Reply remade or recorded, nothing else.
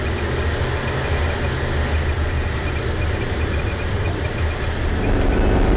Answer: recorded